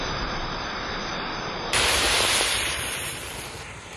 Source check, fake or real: fake